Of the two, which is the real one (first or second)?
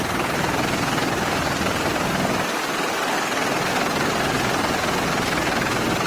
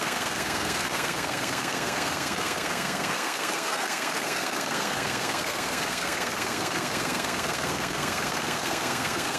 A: first